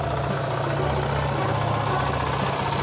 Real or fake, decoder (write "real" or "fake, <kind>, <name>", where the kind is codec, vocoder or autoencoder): real